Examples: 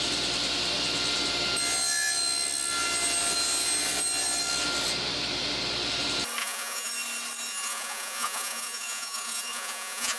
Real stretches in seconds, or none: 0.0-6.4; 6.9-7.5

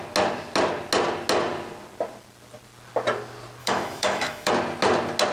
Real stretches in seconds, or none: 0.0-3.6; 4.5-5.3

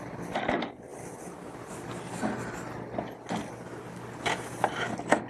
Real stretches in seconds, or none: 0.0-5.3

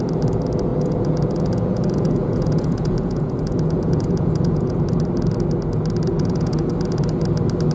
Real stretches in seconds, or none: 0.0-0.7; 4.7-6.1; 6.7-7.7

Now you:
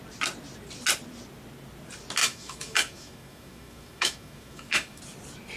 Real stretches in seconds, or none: 0.0-2.2; 5.0-5.6

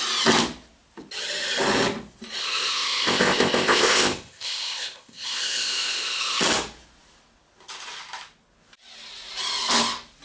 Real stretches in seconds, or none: 0.0-2.4; 6.4-10.2

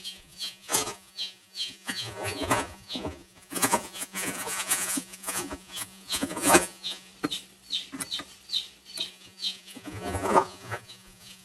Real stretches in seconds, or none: 7.1-9.1

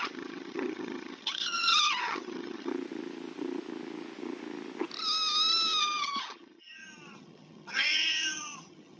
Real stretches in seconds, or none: 2.7-5.8